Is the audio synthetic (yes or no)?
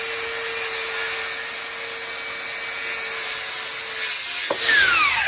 no